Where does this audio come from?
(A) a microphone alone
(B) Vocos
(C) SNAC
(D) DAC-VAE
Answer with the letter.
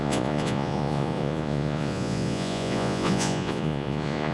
B